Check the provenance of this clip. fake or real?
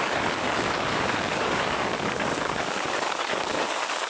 fake